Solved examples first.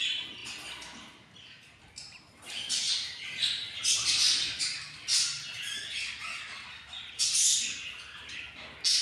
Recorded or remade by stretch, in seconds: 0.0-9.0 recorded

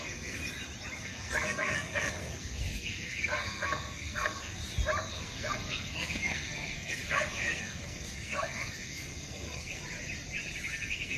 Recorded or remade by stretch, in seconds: 0.0-0.4 remade; 0.4-1.0 recorded; 1.0-4.6 remade; 4.6-5.1 recorded; 5.1-9.8 remade; 9.8-10.7 recorded; 10.7-11.2 remade

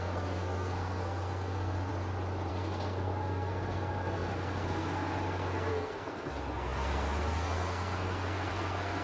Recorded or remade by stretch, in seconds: 0.0-1.9 remade; 1.9-2.5 recorded; 2.5-9.0 remade

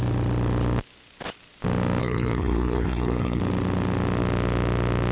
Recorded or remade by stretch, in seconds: 0.0-2.0 recorded; 2.0-3.4 remade; 3.4-5.1 recorded

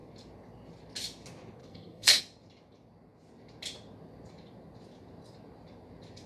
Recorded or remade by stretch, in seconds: 0.0-1.6 recorded; 1.6-2.2 remade; 2.2-6.3 recorded